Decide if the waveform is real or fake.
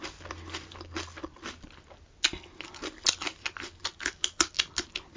real